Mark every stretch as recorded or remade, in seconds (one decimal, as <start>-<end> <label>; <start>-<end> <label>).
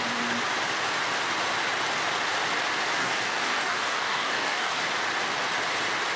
0.0-3.0 recorded; 3.0-4.8 remade; 4.8-6.2 recorded